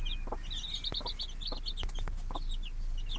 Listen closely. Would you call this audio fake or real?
real